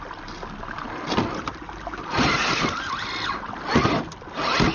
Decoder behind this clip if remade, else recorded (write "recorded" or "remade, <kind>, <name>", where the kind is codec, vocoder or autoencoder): recorded